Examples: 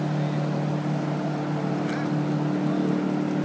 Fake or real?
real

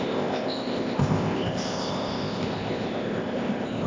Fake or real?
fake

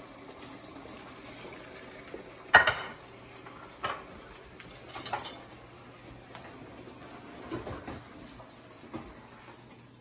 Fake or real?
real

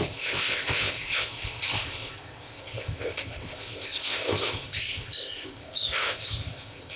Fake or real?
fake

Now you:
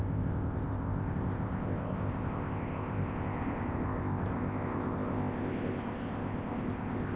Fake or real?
fake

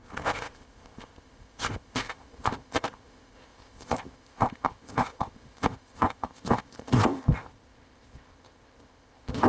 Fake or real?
fake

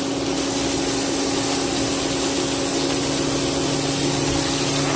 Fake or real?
real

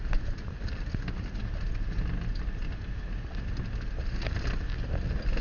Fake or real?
real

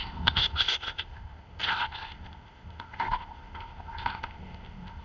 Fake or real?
fake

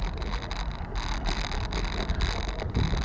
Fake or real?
real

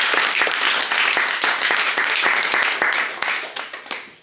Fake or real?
real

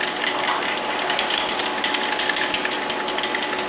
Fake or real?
real